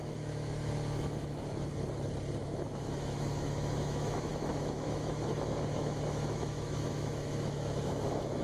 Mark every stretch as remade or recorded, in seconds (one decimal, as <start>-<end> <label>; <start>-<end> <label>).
0.0-1.7 remade; 1.7-2.4 recorded; 2.4-8.4 remade